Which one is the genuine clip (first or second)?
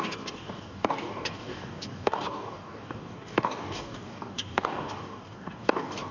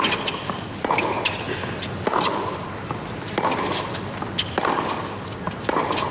second